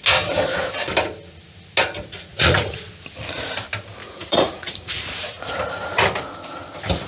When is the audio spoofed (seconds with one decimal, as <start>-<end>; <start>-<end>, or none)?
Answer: 2.3-2.9; 4.0-5.5